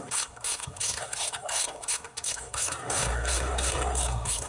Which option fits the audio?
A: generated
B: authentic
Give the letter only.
A